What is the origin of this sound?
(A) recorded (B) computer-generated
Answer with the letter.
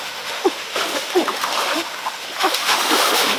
B